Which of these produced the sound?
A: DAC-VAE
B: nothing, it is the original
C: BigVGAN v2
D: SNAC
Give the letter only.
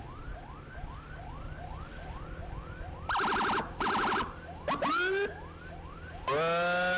B